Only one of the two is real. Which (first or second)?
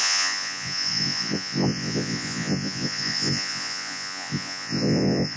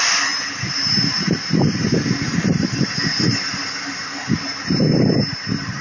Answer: second